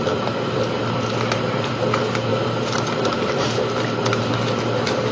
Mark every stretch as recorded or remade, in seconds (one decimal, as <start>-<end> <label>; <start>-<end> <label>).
0.0-5.1 recorded